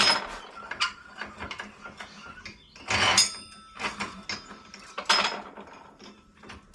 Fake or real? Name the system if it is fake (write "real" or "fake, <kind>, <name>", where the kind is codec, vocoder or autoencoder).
real